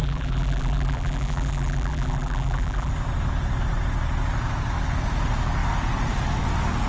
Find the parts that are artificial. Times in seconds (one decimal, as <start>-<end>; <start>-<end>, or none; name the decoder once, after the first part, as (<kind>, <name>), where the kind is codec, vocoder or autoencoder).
0.0-2.9 (vocoder, BigVGAN v2)